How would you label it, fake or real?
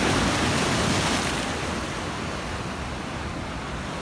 real